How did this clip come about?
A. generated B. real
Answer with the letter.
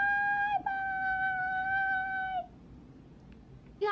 B